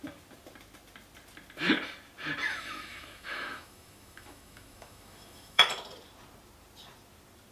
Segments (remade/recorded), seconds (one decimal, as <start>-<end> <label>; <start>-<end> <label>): 0.0-2.5 recorded; 2.5-5.6 remade; 5.6-7.5 recorded